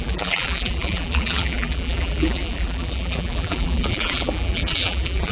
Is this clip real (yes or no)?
no